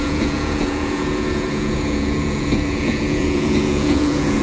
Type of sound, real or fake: fake